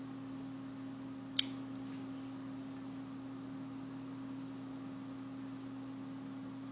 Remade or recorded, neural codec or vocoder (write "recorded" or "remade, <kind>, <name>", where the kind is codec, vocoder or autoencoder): recorded